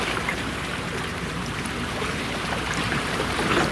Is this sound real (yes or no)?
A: no